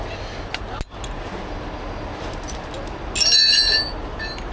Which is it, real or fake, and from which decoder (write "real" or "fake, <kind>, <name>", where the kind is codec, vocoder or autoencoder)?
real